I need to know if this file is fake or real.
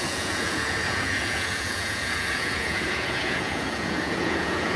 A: fake